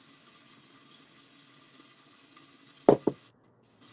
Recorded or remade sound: recorded